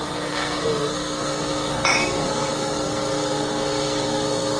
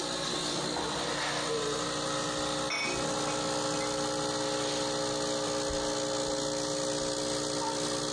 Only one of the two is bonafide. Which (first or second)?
second